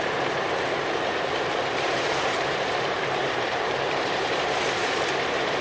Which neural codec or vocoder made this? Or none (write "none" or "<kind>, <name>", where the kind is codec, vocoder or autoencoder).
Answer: vocoder, BigVGAN v2